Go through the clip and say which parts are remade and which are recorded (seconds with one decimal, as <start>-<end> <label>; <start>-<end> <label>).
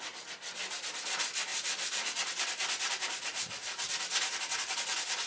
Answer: 0.0-1.5 recorded; 1.5-4.3 remade; 4.3-5.3 recorded